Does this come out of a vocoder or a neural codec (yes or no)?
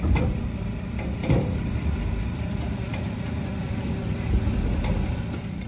yes